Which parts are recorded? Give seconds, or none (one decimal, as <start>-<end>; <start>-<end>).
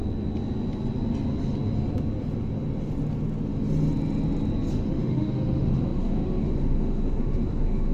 0.0-4.7